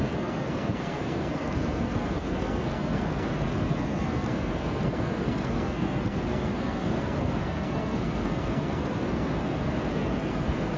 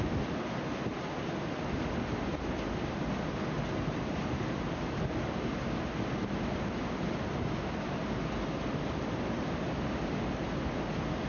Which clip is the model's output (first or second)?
first